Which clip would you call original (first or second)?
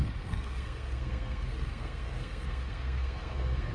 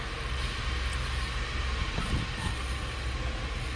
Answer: second